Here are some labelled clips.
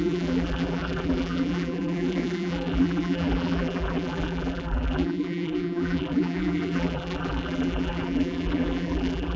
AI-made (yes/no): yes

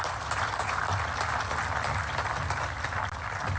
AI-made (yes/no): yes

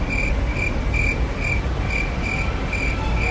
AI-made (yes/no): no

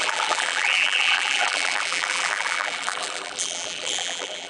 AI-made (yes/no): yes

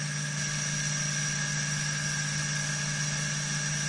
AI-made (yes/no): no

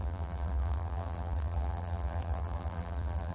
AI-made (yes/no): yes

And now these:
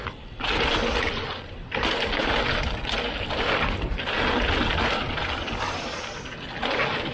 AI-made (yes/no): no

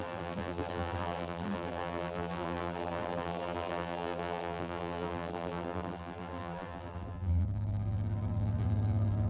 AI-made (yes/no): yes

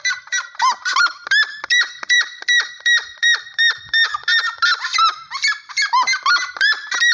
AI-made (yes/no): yes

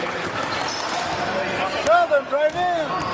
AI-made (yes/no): no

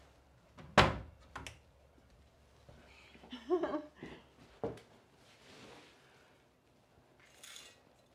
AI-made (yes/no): no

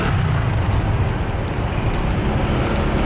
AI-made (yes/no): no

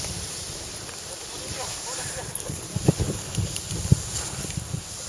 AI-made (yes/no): yes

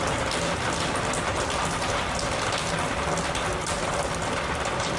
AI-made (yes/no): no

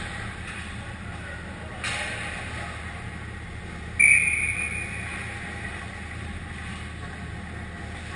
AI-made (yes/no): no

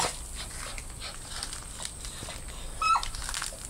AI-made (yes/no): no